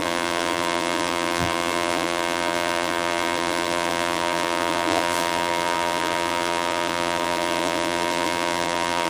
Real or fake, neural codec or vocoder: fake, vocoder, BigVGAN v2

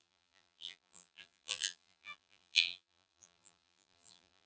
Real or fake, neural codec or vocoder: fake, vocoder, BigVGAN v2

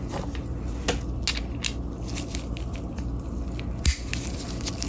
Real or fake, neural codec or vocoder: real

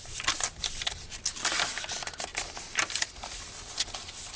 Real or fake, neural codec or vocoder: real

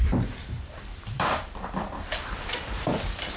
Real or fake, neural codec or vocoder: fake, vocoder, BigVGAN v2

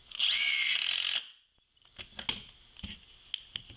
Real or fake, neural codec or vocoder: real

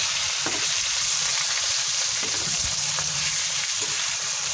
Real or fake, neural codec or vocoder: fake, vocoder, BigVGAN v2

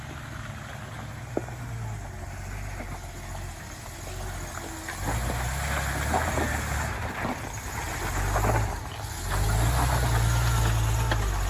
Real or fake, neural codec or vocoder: real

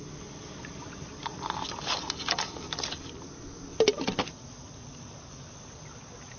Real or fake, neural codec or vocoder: real